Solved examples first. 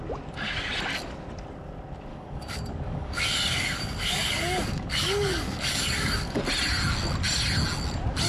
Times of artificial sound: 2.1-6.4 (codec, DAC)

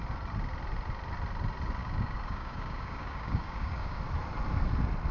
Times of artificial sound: 1.8-4.0 (codec, DAC)